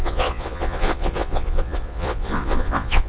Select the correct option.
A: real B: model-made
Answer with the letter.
B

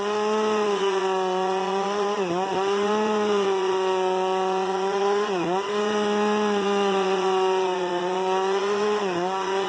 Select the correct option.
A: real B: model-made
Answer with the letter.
B